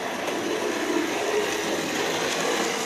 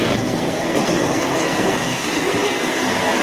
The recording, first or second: first